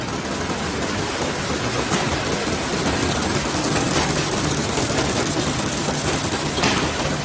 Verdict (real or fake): real